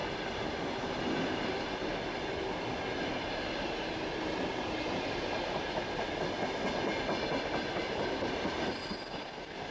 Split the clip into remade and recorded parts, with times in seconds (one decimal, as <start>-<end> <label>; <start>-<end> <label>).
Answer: 0.0-9.7 recorded